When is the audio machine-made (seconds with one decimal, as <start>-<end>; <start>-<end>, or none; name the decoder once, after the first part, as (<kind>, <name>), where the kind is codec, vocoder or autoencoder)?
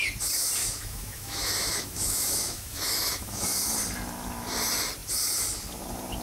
0.6-3.6 (autoencoder, DAC-VAE)